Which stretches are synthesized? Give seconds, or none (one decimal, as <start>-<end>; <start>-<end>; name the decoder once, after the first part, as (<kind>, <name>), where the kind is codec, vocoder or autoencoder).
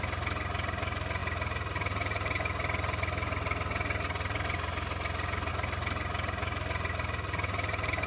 none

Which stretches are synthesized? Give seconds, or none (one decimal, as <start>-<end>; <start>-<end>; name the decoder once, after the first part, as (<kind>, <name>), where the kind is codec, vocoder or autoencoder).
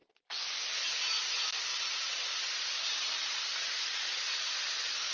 1.7-2.6 (vocoder, Vocos)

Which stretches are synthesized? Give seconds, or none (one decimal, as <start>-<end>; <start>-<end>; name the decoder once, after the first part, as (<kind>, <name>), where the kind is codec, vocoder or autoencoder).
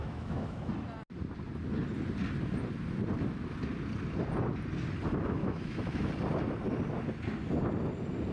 0.0-0.7 (autoencoder, DAC-VAE); 5.4-6.1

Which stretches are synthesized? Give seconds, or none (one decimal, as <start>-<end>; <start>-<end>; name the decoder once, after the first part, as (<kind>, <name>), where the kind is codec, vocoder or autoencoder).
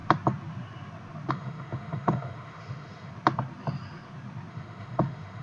1.3-3.1 (autoencoder, DAC-VAE); 4.5-5.4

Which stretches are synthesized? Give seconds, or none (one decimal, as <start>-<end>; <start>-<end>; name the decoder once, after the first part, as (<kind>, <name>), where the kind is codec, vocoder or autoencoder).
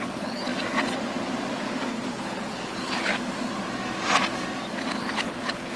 0.0-0.5 (codec, HILCodec); 1.9-3.1; 5.0-5.8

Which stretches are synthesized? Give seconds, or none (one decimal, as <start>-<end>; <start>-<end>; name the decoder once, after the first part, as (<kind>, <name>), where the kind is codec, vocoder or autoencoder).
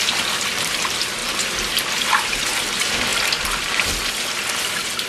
none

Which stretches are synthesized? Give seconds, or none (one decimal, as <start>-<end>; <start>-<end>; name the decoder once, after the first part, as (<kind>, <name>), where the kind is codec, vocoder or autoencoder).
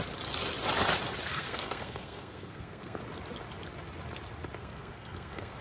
1.3-3.0 (codec, SNAC); 4.6-5.6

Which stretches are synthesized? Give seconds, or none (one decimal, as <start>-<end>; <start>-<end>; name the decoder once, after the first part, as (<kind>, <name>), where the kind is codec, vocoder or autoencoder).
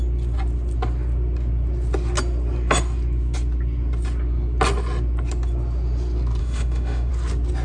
6.4-7.1 (autoencoder, DAC-VAE)